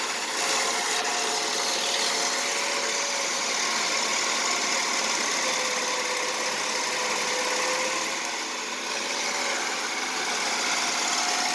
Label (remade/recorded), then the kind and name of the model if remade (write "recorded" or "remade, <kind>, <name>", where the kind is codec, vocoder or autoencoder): recorded